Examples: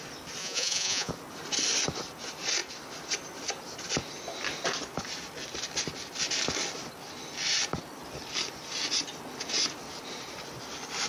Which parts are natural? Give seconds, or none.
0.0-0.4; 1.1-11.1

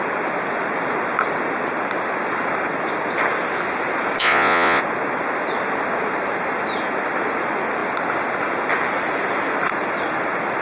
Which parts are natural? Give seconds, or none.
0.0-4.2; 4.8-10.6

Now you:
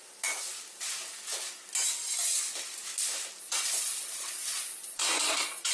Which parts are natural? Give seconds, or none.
0.0-3.4

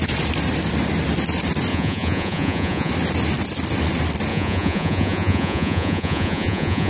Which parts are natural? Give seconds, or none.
0.0-1.7; 2.9-4.3